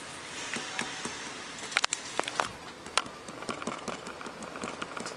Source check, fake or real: real